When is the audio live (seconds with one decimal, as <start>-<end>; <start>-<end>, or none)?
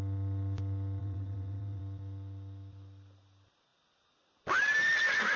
0.0-1.0; 1.8-5.4